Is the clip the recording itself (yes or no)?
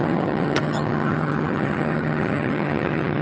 no